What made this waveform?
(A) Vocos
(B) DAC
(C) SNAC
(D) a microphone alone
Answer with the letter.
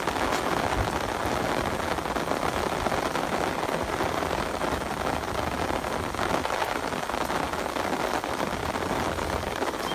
D